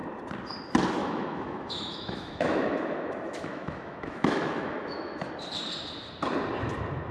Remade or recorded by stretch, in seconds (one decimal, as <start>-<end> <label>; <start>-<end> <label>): 0.0-1.0 recorded; 1.0-5.3 remade; 5.3-7.1 recorded